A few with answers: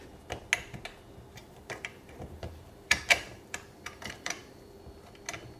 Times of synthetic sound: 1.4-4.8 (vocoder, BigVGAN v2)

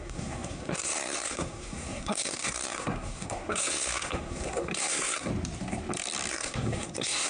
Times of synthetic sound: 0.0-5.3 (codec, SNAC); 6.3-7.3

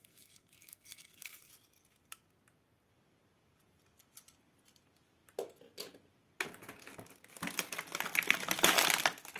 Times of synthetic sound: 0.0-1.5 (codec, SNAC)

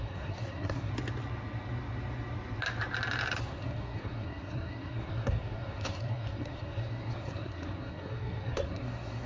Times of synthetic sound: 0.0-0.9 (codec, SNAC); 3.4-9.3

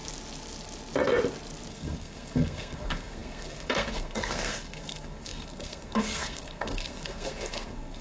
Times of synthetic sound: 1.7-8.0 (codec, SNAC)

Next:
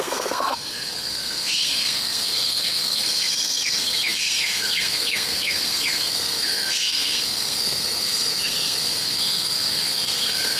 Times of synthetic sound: 0.0-10.6 (codec, SNAC)

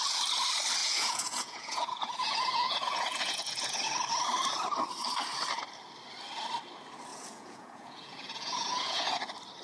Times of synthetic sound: 0.8-3.8 (vocoder, Vocos); 7.1-9.1

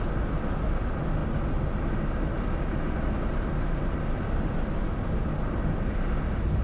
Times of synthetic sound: none